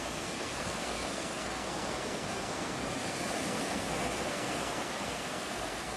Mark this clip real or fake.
fake